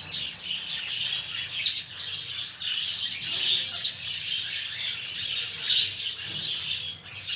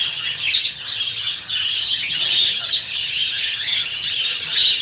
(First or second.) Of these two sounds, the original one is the first